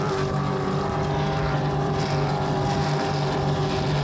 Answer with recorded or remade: recorded